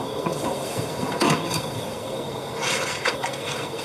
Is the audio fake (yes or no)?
yes